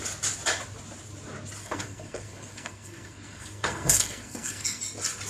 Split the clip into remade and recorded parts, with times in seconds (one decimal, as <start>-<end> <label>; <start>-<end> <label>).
0.0-1.6 recorded; 1.6-4.8 remade; 4.8-5.3 recorded